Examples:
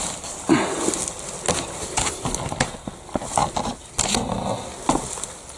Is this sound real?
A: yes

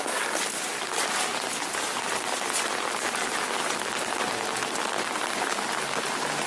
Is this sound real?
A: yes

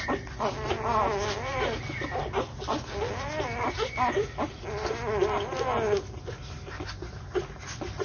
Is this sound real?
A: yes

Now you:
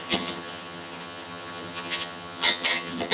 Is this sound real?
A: no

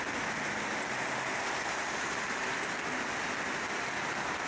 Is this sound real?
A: yes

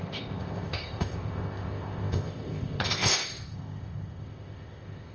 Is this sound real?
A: no